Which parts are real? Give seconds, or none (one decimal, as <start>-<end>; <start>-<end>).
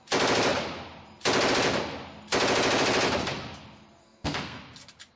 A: 0.0-4.0; 4.6-5.2